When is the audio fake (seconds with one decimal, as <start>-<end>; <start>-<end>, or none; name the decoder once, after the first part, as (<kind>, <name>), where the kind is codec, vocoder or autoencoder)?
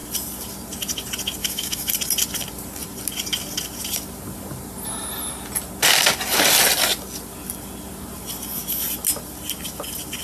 1.4-1.9 (autoencoder, DAC-VAE)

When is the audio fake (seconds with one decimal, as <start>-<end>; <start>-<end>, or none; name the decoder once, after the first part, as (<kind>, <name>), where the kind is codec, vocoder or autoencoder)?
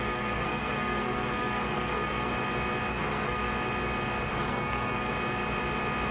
0.0-2.3 (codec, SNAC); 2.9-3.5; 4.3-5.1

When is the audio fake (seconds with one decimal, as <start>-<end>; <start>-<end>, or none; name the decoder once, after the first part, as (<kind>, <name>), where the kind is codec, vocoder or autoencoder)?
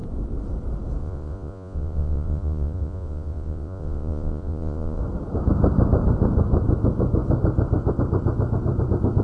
1.0-5.0 (vocoder, Vocos)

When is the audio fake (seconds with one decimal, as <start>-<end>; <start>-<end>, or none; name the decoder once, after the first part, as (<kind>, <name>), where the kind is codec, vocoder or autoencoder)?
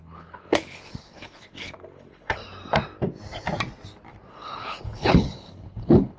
0.0-2.4 (codec, HILCodec); 4.3-6.2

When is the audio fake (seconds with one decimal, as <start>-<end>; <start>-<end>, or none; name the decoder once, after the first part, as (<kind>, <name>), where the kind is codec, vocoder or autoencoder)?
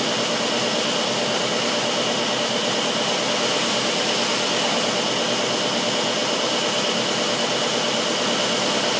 none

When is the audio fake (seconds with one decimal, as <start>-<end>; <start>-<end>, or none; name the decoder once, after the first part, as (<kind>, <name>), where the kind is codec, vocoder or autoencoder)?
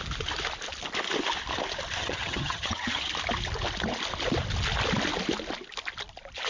2.0-3.1 (vocoder, HiFi-GAN)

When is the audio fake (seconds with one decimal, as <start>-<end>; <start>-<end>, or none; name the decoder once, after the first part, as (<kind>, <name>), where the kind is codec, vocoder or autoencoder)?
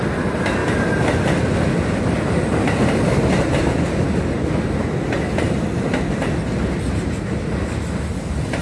none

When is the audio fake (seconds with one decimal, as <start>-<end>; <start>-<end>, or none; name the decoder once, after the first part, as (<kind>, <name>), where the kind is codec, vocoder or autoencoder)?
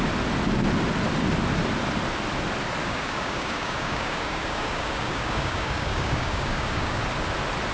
2.8-7.0 (codec, DAC)